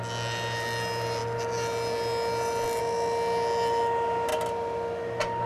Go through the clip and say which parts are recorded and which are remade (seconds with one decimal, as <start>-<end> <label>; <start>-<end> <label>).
0.0-5.5 recorded

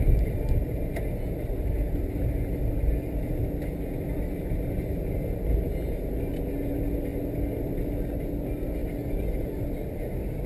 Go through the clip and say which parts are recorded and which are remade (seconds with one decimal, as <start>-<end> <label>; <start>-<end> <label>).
0.0-10.5 recorded

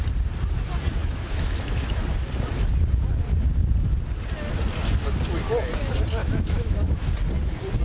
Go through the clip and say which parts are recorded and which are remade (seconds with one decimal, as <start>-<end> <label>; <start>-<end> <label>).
0.0-1.0 recorded; 1.0-1.9 remade; 1.9-6.2 recorded; 6.2-7.1 remade; 7.1-7.8 recorded

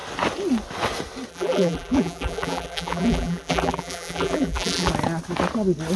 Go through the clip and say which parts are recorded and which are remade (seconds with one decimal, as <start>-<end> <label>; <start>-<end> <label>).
0.0-1.3 recorded; 1.3-4.9 remade; 4.9-6.0 recorded

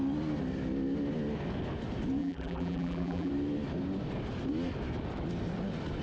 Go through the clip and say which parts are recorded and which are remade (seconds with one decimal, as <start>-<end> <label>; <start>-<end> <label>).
0.0-2.2 recorded; 2.2-3.3 remade; 3.3-6.0 recorded